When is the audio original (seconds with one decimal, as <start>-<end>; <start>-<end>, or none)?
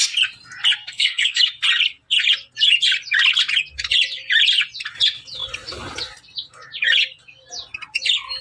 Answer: 0.0-0.8; 1.4-8.4